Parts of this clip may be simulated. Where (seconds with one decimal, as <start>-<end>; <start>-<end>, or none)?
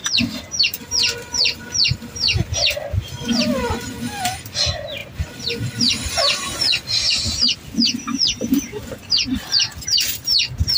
none